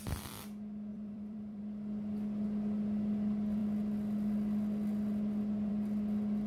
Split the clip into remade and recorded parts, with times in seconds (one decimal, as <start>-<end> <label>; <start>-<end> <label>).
0.0-0.9 recorded; 0.9-1.6 remade; 1.6-6.5 recorded

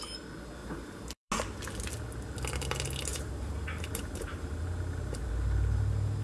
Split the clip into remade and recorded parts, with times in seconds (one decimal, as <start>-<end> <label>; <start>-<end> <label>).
0.0-0.6 recorded; 0.6-1.3 remade; 1.3-3.1 recorded; 3.1-5.3 remade; 5.3-6.2 recorded

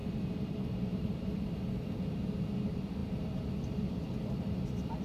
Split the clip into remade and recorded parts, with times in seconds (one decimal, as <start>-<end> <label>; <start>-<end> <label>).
0.0-1.3 remade; 1.3-5.0 recorded

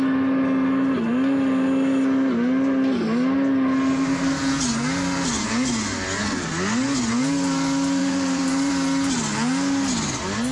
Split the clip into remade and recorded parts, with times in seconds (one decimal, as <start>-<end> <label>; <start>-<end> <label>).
0.0-8.0 recorded; 8.0-8.7 remade; 8.7-10.5 recorded

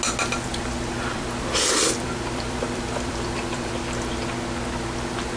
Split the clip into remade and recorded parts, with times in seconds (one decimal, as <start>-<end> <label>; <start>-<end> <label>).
0.0-0.5 recorded; 0.5-3.7 remade; 3.7-5.4 recorded

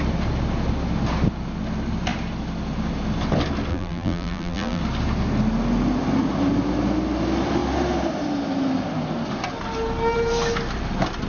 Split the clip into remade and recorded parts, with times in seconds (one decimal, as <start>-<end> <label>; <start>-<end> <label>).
0.0-3.7 recorded; 3.7-4.8 remade; 4.8-11.3 recorded

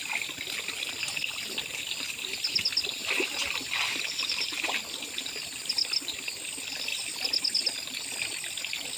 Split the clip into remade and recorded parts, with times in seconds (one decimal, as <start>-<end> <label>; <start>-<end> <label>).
0.0-3.0 recorded; 3.0-4.8 remade; 4.8-9.0 recorded

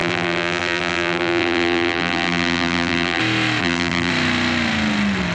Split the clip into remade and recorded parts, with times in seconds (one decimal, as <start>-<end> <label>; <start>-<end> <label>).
0.0-3.2 remade; 3.2-3.6 recorded; 3.6-4.1 remade; 4.1-5.3 recorded